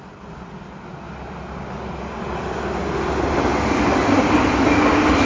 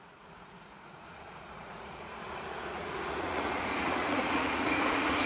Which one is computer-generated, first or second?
second